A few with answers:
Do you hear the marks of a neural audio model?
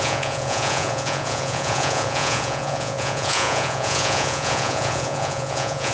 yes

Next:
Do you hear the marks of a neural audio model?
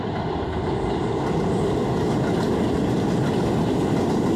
no